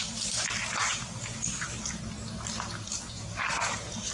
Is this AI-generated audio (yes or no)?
yes